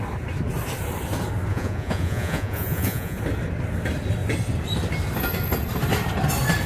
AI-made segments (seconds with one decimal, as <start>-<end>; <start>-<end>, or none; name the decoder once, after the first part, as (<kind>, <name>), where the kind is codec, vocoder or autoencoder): 1.5-3.2 (vocoder, Vocos)